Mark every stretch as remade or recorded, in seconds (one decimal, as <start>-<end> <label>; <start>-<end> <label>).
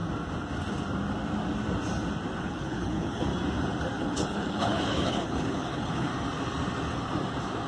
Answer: 0.0-2.4 recorded; 2.4-3.3 remade; 3.3-4.0 recorded; 4.0-6.1 remade; 6.1-7.7 recorded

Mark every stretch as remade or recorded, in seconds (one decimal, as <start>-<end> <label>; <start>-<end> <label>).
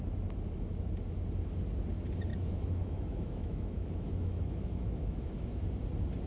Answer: 0.0-2.3 recorded; 2.3-5.6 remade; 5.6-6.3 recorded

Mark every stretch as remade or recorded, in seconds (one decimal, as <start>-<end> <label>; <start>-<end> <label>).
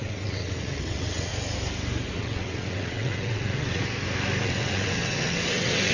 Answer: 0.0-1.3 remade; 1.3-2.1 recorded; 2.1-3.8 remade; 3.8-4.4 recorded; 4.4-5.9 remade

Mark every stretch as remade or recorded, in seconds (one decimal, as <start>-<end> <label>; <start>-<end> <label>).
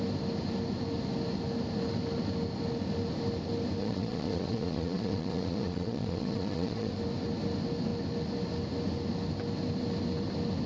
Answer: 0.0-3.8 recorded; 3.8-6.9 remade; 6.9-10.7 recorded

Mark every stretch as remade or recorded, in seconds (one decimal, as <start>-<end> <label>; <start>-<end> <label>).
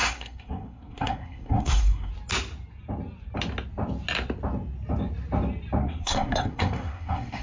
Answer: 0.0-2.1 remade; 2.1-5.8 recorded; 5.8-7.4 remade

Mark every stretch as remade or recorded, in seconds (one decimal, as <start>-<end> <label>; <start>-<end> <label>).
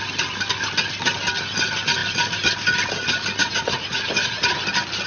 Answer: 0.0-3.4 recorded; 3.4-4.6 remade; 4.6-5.1 recorded